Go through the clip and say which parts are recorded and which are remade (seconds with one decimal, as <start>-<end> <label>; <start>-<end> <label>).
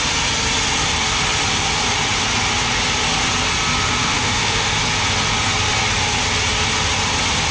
0.0-4.0 recorded; 4.0-4.7 remade; 4.7-7.5 recorded